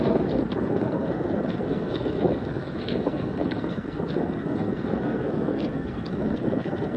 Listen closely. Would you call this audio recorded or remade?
remade